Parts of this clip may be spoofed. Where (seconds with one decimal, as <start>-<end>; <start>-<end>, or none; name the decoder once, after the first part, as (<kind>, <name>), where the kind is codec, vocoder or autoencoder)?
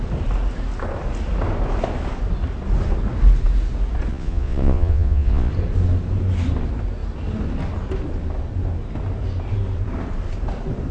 4.1-5.5 (vocoder, Vocos)